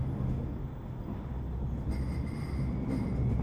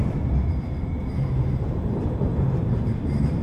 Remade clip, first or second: second